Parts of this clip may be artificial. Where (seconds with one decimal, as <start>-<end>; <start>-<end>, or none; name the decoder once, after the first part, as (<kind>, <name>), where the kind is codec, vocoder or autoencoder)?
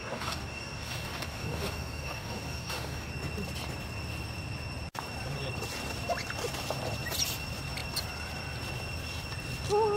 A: 0.0-3.1 (codec, DAC)